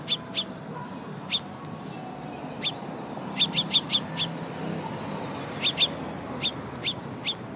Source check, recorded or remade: recorded